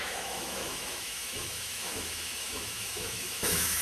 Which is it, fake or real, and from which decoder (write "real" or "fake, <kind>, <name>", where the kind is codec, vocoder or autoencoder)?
fake, autoencoder, DAC-VAE